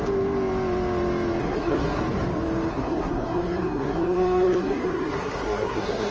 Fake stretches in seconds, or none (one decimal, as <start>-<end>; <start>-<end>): 1.4-2.0; 2.7-6.1